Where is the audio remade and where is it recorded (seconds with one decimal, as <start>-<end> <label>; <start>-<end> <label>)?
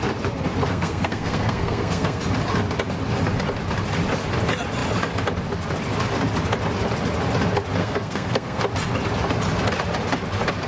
0.0-0.7 recorded; 0.7-2.2 remade; 2.2-7.8 recorded; 7.8-8.6 remade; 8.6-10.7 recorded